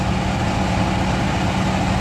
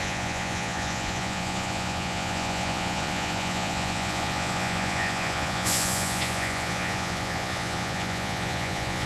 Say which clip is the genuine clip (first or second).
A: first